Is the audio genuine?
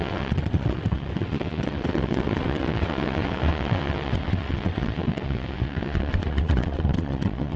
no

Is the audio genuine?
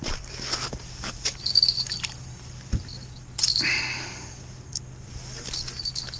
yes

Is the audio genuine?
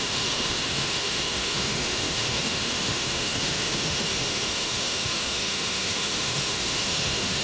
no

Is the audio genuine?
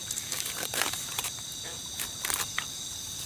no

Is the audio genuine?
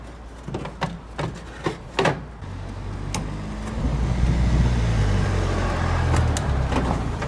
yes